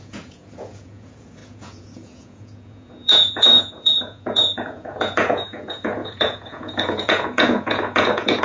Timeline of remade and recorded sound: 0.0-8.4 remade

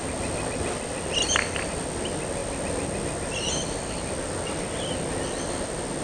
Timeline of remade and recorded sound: 0.0-6.0 recorded

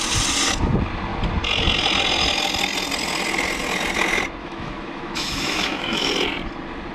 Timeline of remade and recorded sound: 0.0-4.4 recorded; 4.4-6.1 remade; 6.1-6.9 recorded